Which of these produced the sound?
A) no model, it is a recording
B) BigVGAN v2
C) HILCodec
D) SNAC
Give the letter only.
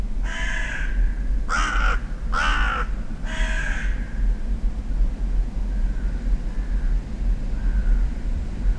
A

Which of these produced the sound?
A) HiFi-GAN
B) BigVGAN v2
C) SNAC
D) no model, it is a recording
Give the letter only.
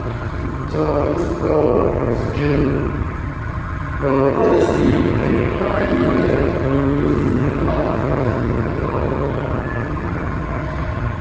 A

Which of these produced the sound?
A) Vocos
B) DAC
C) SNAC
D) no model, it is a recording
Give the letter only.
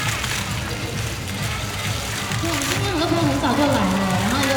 D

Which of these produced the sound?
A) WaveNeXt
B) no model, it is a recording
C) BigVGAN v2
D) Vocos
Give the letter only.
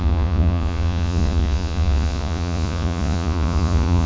D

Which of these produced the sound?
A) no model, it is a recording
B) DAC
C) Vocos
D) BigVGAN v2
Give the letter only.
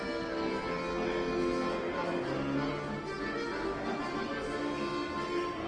A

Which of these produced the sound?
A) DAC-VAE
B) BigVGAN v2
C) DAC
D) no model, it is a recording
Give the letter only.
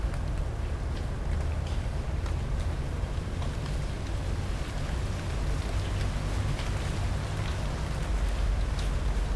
D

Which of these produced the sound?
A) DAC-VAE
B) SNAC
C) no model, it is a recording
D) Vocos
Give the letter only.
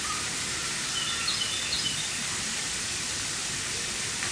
C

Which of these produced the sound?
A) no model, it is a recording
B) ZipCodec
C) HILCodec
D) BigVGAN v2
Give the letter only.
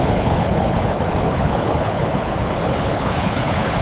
C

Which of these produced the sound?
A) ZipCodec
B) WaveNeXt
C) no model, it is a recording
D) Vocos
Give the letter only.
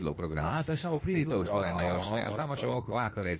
A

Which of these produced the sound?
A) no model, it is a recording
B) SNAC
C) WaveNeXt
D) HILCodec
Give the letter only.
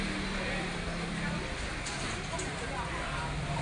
A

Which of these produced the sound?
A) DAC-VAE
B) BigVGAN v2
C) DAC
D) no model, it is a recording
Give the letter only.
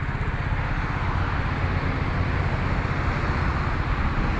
D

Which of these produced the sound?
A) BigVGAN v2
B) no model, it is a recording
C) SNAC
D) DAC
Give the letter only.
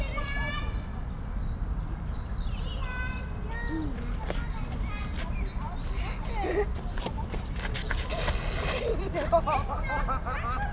B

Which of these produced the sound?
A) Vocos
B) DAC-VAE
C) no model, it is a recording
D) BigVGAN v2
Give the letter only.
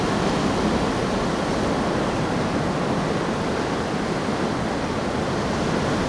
C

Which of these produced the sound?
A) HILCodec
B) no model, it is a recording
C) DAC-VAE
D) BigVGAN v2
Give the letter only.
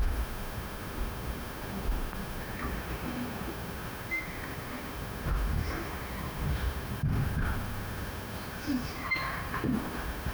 C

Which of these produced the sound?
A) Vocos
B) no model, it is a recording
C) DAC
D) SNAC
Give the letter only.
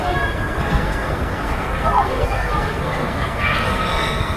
D